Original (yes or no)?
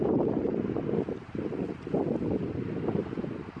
yes